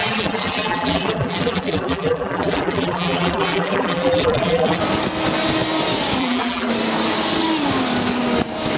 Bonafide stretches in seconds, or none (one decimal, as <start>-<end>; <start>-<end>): 4.8-6.2; 6.7-8.8